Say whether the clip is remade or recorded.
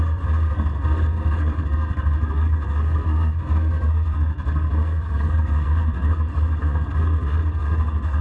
remade